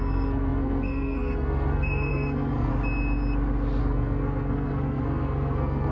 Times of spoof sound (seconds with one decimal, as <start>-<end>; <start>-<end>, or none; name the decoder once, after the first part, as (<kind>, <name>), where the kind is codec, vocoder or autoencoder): 0.0-2.7 (codec, SNAC); 3.8-5.9